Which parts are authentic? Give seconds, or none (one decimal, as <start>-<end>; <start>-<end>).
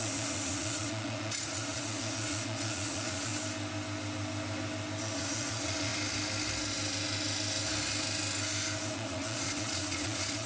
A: 3.3-5.0; 5.9-8.9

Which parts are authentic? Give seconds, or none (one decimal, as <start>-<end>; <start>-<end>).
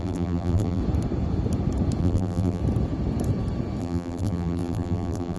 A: 0.8-2.0; 2.6-3.8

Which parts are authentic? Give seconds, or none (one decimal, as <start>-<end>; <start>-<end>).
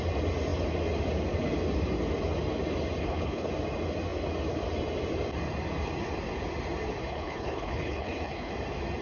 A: 0.0-3.0; 3.5-7.0; 8.5-9.0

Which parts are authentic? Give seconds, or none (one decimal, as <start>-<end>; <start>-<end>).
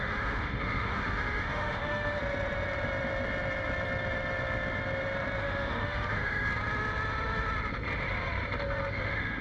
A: 2.2-5.4; 6.5-8.9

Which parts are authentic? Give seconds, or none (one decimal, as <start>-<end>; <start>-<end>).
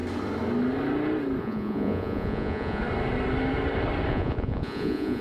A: 0.0-1.4; 2.8-4.1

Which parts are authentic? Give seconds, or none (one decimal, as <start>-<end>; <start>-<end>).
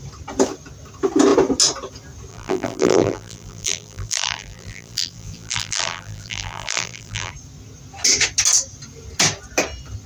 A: 0.0-2.3; 7.3-10.1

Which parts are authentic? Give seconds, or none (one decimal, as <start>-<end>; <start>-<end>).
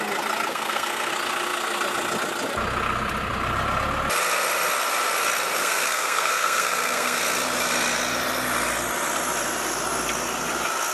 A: 0.0-0.5; 1.1-5.6; 7.2-10.9